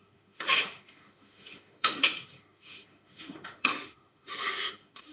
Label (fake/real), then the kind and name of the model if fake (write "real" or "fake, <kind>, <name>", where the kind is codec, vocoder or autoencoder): fake, autoencoder, DAC-VAE